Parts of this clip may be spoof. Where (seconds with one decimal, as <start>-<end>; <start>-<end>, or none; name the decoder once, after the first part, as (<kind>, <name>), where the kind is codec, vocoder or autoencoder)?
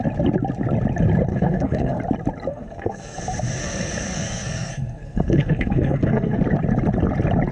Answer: 1.3-2.0 (codec, SNAC); 2.5-3.2; 3.6-6.4